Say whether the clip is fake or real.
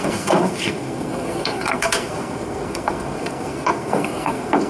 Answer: fake